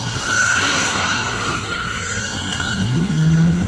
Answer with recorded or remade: remade